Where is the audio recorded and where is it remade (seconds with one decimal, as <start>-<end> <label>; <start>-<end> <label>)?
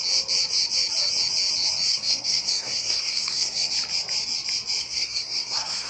0.0-1.9 recorded; 1.9-3.7 remade; 3.7-4.8 recorded; 4.8-5.9 remade